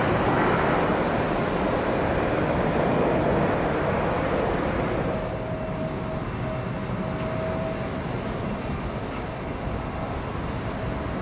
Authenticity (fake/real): real